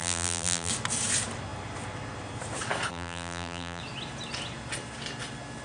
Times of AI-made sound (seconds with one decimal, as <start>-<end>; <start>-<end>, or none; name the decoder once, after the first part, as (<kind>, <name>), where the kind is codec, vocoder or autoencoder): 0.0-0.7 (vocoder, BigVGAN v2); 2.9-3.8